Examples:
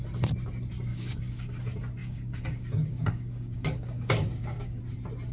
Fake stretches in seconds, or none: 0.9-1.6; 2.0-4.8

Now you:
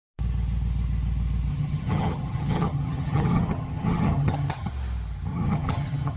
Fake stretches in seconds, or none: 1.5-4.7; 5.3-6.2

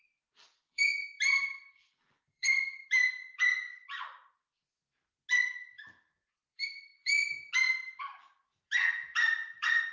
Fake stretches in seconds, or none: 0.0-3.2; 6.2-7.2; 8.0-9.9

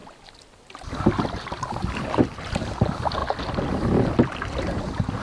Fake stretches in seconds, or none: none